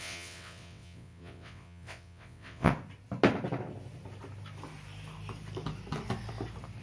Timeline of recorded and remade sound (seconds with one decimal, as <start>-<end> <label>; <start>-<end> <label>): 0.0-2.7 remade; 2.7-6.8 recorded